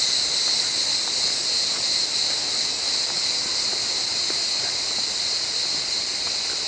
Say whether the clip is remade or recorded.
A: recorded